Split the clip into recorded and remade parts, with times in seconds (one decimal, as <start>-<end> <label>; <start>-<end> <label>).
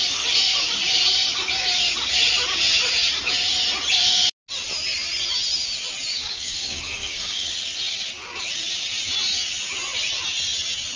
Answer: 0.0-6.1 recorded; 6.1-7.6 remade; 7.6-11.0 recorded